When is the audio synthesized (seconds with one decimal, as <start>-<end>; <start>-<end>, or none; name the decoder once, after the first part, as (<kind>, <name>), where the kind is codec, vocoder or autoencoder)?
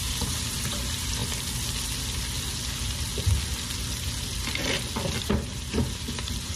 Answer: 0.0-1.2 (vocoder, BigVGAN v2); 5.2-6.6